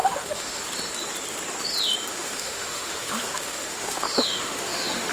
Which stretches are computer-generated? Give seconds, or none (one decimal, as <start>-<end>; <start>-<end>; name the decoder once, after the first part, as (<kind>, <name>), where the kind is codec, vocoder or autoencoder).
0.0-0.6 (autoencoder, DAC-VAE); 2.1-5.1